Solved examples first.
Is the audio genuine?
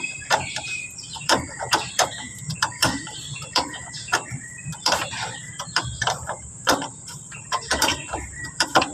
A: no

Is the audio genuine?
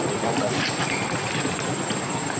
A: yes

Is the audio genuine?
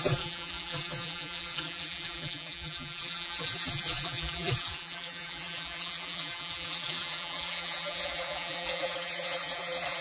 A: no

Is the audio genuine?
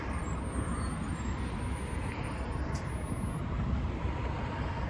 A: yes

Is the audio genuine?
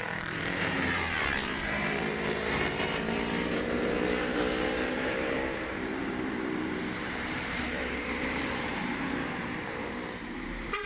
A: no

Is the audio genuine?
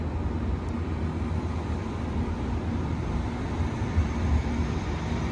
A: yes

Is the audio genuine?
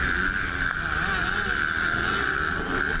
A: yes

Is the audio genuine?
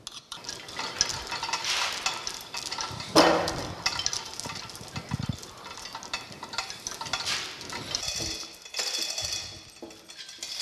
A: yes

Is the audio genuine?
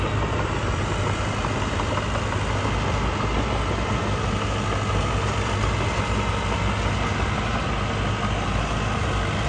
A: yes